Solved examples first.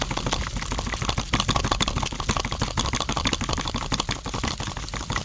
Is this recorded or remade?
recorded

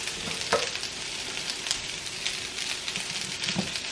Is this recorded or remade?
remade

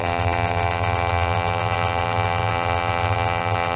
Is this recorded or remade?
remade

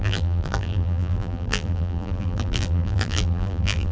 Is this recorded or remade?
remade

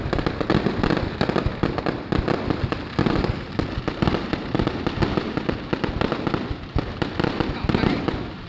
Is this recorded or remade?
recorded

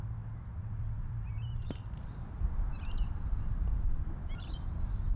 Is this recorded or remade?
remade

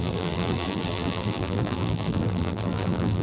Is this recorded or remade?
remade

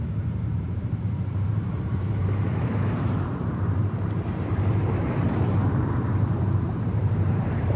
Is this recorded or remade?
remade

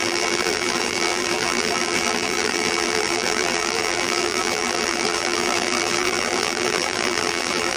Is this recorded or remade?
remade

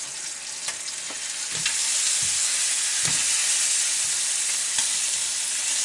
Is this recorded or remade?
recorded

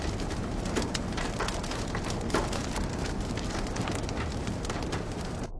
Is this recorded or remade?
remade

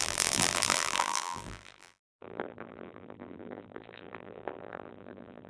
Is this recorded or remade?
remade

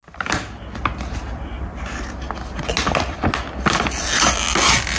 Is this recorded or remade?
recorded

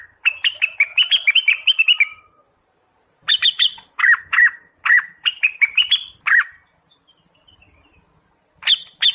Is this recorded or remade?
remade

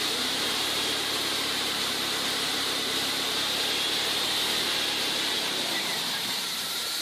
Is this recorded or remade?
remade